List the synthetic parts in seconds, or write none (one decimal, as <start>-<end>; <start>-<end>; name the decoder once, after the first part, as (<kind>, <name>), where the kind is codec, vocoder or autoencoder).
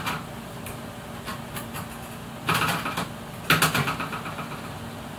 none